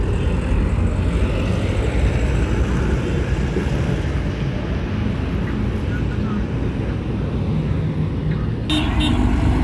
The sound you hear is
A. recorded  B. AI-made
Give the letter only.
A